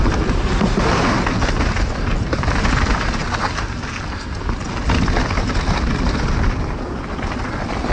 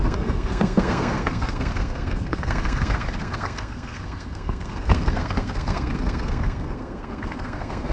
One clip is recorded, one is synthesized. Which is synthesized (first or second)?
second